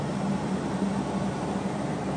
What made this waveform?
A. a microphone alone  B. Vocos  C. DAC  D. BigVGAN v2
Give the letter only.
D